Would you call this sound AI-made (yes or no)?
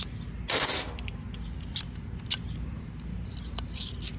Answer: no